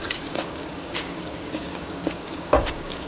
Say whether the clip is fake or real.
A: fake